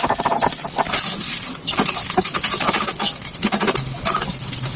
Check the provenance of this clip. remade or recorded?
recorded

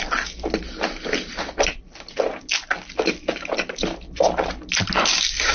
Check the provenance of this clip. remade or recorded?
recorded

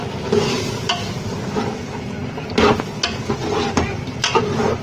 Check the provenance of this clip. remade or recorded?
recorded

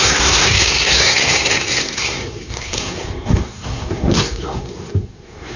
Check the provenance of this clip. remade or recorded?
remade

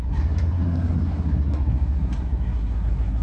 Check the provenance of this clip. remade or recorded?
remade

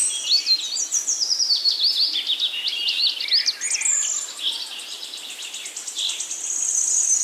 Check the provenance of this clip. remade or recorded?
recorded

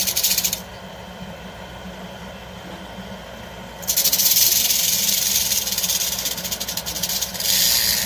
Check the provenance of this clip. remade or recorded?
recorded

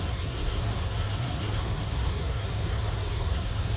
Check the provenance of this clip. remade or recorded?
remade